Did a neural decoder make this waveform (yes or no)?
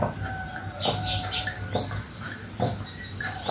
no